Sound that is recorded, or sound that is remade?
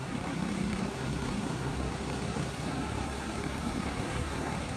remade